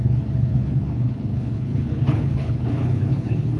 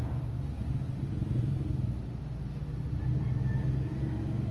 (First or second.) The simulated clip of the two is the first